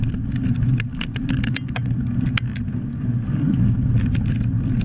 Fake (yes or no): no